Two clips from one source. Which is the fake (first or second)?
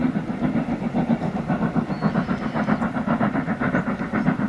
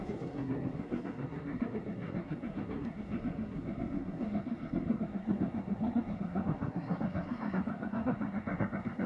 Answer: second